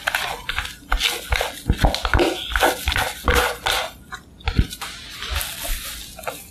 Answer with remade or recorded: recorded